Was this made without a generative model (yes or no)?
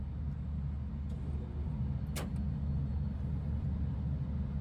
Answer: yes